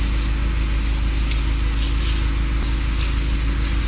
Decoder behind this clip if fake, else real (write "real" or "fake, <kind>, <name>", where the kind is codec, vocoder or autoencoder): real